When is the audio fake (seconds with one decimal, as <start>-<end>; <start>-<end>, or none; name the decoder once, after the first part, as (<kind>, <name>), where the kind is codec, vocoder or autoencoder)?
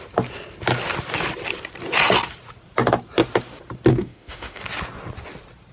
3.9-4.6 (autoencoder, DAC-VAE)